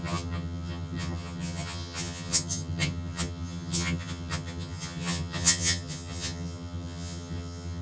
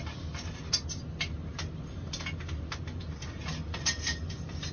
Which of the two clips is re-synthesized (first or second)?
first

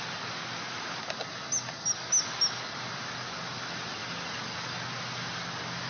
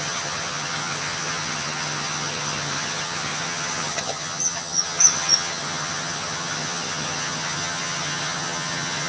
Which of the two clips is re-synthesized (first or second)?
second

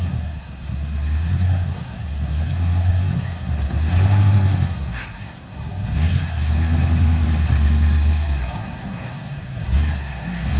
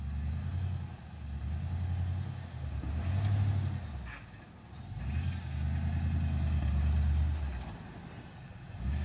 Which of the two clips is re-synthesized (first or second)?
first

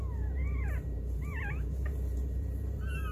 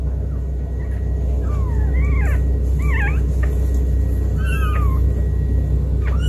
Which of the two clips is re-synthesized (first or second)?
first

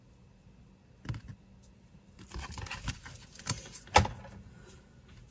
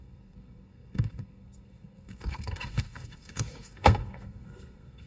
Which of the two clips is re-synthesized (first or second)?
second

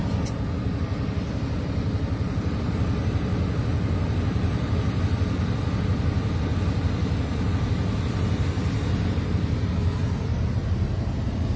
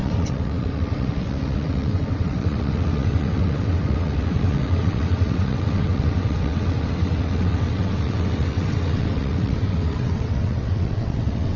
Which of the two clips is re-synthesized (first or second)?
second